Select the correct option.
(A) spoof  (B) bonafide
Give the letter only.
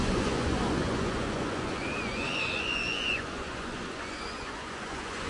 A